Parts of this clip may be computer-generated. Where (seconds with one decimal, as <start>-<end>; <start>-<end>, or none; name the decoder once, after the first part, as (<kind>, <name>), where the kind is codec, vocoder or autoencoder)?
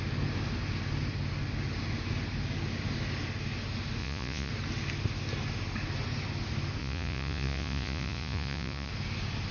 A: 4.0-4.5 (vocoder, Vocos); 6.8-8.9